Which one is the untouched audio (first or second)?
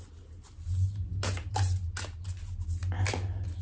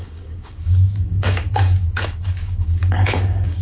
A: first